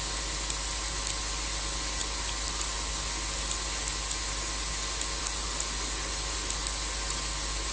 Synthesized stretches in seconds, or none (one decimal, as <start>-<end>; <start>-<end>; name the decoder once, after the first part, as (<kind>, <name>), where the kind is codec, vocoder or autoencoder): none